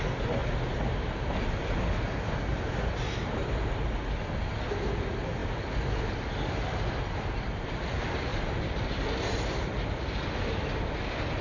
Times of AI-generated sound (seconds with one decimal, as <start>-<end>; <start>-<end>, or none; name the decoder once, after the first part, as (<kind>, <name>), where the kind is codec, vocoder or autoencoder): 8.3-8.8 (vocoder, BigVGAN v2)